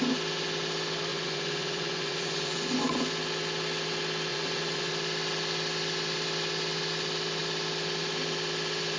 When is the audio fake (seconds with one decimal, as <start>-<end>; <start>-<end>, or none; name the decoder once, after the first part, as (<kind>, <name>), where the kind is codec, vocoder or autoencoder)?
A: 1.1-2.7 (vocoder, Vocos); 4.3-4.9